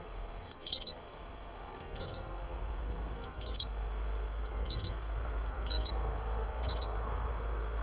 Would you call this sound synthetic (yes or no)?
yes